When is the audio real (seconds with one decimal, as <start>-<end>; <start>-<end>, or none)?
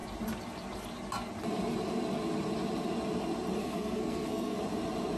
0.0-3.6; 4.6-5.2